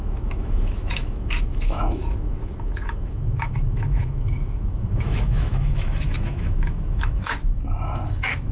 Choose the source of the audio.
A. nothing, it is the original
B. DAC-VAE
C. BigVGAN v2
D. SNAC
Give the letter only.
B